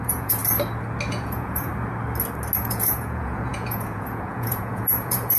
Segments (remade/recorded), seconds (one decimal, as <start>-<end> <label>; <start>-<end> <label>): 0.0-0.4 remade; 0.4-1.1 recorded; 1.1-1.7 remade; 1.7-2.6 recorded; 2.6-5.4 remade